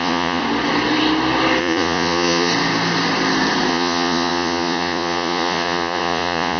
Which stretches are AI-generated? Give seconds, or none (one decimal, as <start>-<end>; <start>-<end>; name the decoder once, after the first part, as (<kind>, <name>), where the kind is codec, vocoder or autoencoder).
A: 0.0-0.4 (vocoder, Vocos); 1.6-2.5; 3.7-6.6